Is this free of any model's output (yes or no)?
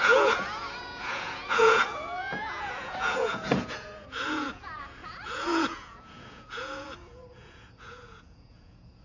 no